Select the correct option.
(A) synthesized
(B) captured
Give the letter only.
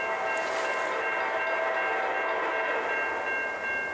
B